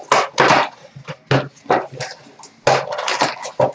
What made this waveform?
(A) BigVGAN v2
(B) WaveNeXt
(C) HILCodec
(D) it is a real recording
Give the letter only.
D